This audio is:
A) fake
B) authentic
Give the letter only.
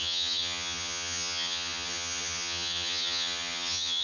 A